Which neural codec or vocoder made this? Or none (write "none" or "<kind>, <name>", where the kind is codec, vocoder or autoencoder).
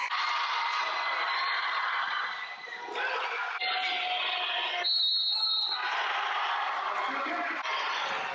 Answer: none